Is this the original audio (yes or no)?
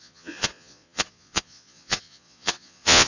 no